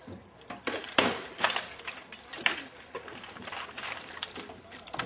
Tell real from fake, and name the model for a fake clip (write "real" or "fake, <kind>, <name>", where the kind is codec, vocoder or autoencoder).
real